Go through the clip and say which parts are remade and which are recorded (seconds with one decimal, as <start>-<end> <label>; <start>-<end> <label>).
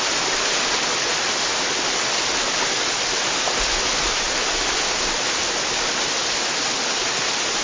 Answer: 0.0-7.6 recorded